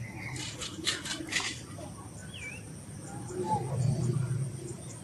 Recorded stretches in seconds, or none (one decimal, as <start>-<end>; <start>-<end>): 0.0-5.0